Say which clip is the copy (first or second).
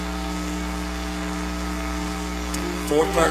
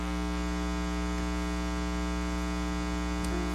first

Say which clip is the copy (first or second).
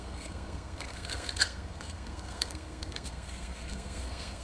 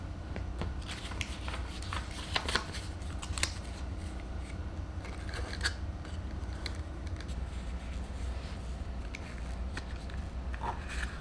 first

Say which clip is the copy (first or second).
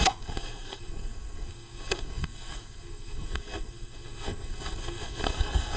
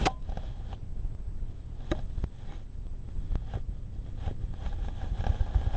first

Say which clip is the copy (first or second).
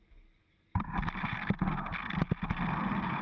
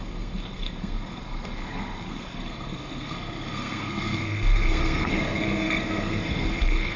second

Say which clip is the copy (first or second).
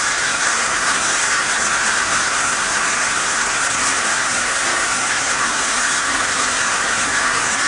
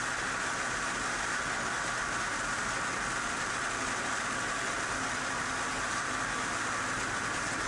first